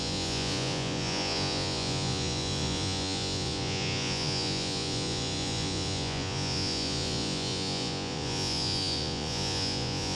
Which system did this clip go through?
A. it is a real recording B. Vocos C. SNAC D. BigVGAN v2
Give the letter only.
B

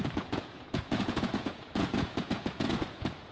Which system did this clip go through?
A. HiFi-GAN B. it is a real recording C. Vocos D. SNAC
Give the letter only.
C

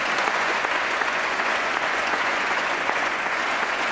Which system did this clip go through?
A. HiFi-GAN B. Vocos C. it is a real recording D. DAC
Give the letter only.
B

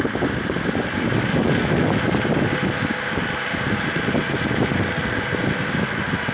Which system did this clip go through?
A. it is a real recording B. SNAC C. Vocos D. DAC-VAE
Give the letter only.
A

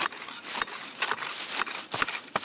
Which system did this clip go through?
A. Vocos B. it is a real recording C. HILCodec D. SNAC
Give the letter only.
B